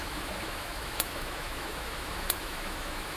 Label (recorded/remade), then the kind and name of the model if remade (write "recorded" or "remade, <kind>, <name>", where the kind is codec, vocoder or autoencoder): remade, autoencoder, DAC-VAE